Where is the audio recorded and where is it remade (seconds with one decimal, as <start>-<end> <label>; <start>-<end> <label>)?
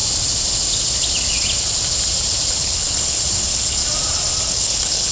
0.0-2.5 recorded; 2.5-3.8 remade; 3.8-4.5 recorded; 4.5-5.1 remade